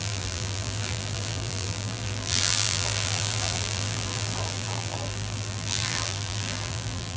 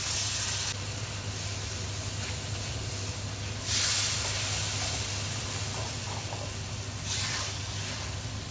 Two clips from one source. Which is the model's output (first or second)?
first